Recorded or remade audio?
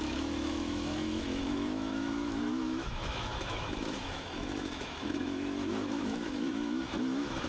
remade